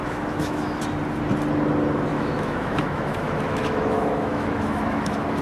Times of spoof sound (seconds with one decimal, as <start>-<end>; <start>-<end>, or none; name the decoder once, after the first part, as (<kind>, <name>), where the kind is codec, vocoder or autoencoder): 0.0-0.8 (autoencoder, DAC-VAE); 2.1-5.4